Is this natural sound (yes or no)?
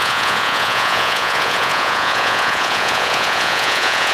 no